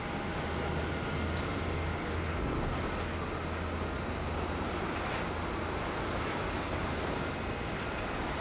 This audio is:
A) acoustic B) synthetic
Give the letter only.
A